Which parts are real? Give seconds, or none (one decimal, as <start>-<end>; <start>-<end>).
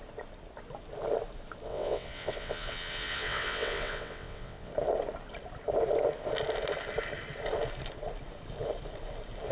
0.0-1.7; 4.7-9.5